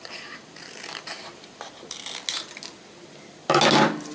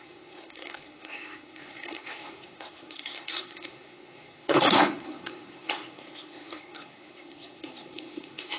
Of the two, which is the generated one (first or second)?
second